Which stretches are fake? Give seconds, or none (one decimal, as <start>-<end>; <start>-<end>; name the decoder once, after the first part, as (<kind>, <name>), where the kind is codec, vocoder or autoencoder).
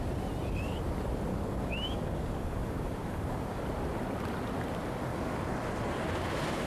1.3-3.6 (codec, DAC); 5.1-5.6